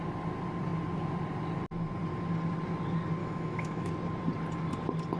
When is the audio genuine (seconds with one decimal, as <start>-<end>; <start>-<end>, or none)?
0.0-3.2; 3.9-5.2